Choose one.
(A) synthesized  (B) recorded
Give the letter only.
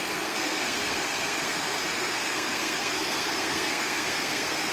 A